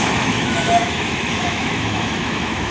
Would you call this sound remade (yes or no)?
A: yes